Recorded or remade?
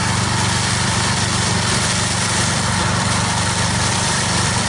remade